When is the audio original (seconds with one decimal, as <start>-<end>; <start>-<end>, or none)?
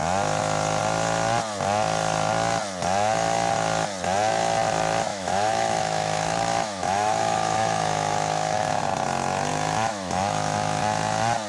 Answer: 0.0-5.1; 8.8-9.5; 10.8-11.5